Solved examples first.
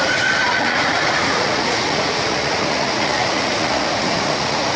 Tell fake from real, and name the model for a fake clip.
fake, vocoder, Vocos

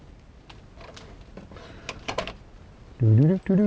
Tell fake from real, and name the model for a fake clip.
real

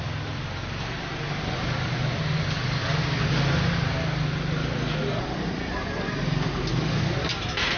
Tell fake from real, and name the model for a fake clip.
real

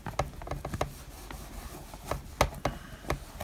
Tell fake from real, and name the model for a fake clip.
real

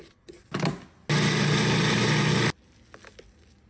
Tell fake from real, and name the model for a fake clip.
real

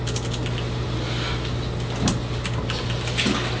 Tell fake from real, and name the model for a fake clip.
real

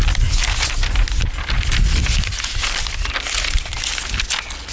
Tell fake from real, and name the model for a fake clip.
real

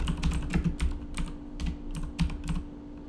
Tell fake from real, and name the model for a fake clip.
real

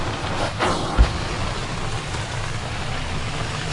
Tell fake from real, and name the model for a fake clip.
real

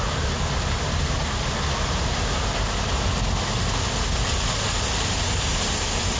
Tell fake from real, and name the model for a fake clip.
real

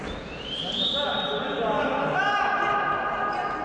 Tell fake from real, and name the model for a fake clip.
real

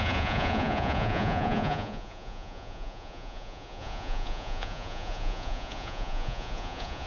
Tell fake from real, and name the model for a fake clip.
fake, vocoder, Vocos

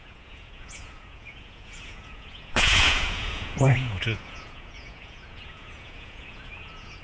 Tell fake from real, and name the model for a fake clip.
fake, vocoder, Vocos